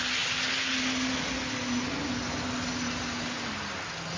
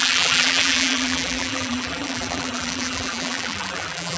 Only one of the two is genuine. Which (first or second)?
first